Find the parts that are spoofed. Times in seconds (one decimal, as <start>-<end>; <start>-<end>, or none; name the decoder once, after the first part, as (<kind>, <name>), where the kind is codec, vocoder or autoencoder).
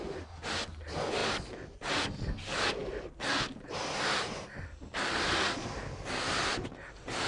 none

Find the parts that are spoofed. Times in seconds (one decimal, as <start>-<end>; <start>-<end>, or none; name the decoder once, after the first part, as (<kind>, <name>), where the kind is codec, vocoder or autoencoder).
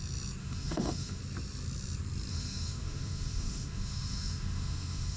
0.4-1.2 (autoencoder, DAC-VAE); 2.3-5.2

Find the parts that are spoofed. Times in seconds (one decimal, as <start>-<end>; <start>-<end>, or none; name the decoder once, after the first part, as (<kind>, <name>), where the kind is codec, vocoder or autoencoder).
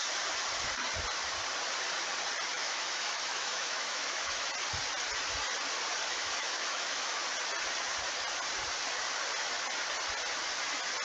2.5-4.5 (autoencoder, DAC-VAE); 6.1-7.2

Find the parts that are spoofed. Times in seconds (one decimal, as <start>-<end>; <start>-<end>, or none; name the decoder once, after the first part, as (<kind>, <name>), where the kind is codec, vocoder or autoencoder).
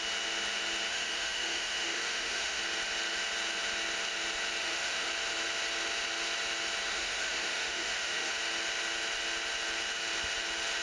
0.9-2.6 (autoencoder, DAC-VAE); 4.6-5.1; 6.9-8.3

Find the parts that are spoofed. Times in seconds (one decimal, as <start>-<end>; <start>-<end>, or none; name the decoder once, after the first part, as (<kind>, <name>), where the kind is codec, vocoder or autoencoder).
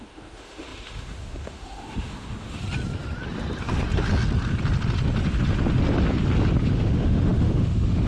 0.0-2.6 (autoencoder, DAC-VAE); 6.7-8.1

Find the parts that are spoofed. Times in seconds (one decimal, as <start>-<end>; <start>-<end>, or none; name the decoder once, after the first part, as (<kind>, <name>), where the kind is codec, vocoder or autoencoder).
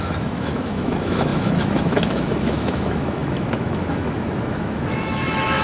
0.0-5.6 (autoencoder, DAC-VAE)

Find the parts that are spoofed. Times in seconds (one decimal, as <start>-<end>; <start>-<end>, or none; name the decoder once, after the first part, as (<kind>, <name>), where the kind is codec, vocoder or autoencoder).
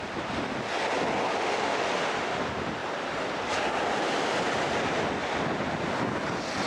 1.3-1.9 (autoencoder, DAC-VAE)